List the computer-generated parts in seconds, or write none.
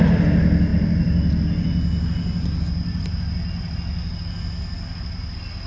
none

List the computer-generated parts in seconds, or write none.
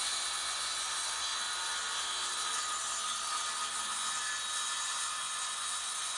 0.0-1.3 (vocoder, Vocos); 3.8-6.2